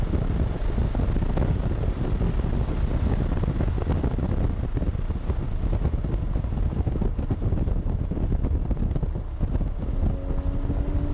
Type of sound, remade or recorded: recorded